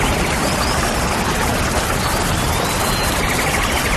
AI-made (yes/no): no